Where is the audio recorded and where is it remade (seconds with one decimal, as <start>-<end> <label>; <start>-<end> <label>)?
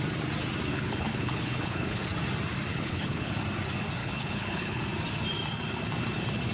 0.0-0.7 recorded; 0.7-2.0 remade; 2.0-2.7 recorded; 2.7-3.3 remade; 3.3-4.0 recorded; 4.0-4.8 remade; 4.8-6.5 recorded